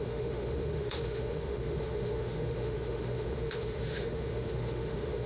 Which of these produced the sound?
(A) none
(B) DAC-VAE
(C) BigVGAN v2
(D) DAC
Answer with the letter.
B